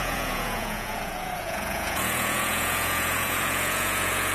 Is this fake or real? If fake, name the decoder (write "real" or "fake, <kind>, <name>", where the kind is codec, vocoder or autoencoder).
fake, vocoder, Vocos